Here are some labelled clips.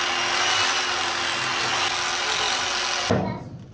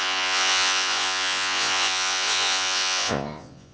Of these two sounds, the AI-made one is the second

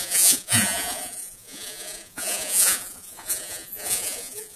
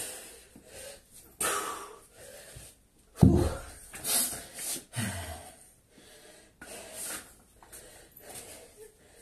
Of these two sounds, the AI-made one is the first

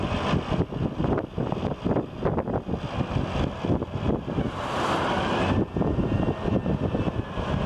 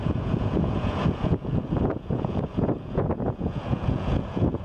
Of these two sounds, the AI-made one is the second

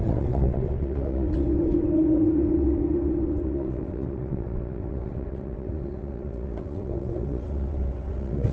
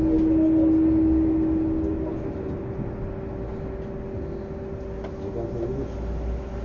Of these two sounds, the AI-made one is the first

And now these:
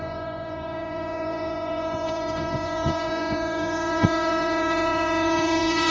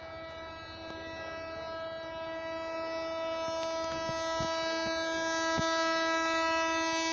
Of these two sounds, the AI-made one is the first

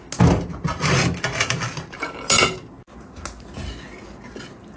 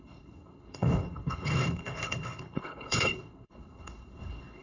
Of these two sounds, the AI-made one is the second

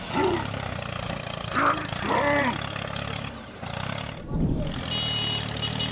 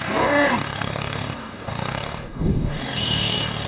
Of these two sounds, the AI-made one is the second